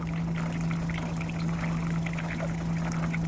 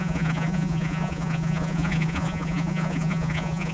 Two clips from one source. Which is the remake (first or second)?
second